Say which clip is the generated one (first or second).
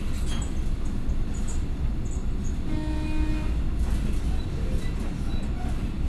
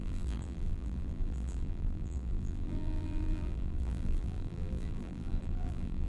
second